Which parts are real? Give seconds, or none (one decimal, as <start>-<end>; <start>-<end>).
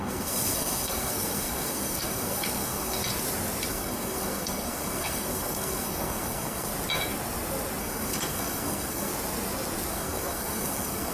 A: 3.0-3.7; 6.7-7.8; 9.1-9.9